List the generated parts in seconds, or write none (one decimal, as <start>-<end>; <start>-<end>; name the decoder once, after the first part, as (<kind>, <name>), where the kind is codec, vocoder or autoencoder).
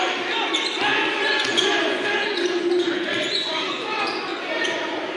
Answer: 0.9-4.0 (vocoder, Vocos)